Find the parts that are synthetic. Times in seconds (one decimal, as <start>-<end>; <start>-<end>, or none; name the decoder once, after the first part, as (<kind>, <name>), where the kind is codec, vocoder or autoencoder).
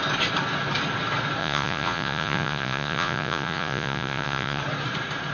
1.4-4.6 (vocoder, Vocos)